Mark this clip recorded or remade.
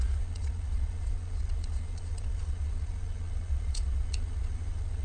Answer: remade